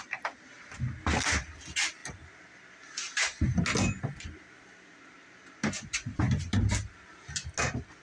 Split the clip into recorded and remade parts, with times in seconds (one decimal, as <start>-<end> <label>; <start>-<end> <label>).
0.0-8.0 recorded

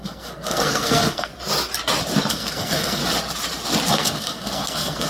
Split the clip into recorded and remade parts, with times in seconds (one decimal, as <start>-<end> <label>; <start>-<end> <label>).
0.0-1.3 remade; 1.3-2.3 recorded; 2.3-3.0 remade; 3.0-3.9 recorded; 3.9-5.1 remade

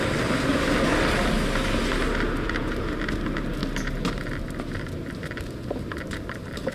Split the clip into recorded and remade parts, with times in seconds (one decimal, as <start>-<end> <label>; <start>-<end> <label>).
0.0-6.7 recorded

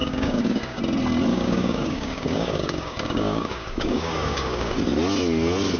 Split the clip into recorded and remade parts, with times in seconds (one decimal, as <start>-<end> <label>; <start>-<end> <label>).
0.0-0.8 remade; 0.8-1.3 recorded; 1.3-4.8 remade; 4.8-5.8 recorded

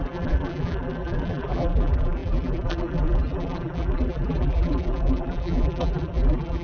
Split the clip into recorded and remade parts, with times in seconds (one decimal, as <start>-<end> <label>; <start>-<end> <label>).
0.0-6.6 remade